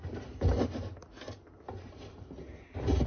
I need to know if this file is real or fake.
real